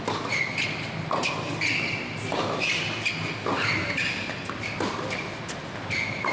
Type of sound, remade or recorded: recorded